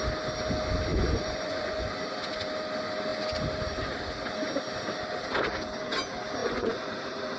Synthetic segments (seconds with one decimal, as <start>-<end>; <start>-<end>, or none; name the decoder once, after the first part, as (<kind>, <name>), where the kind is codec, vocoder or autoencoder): 0.9-1.9 (vocoder, Vocos); 6.4-6.9